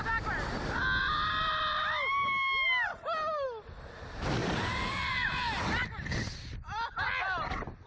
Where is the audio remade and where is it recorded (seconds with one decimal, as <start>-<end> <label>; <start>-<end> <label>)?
0.0-1.0 recorded; 1.0-1.5 remade; 1.5-4.4 recorded; 4.4-5.6 remade; 5.6-7.9 recorded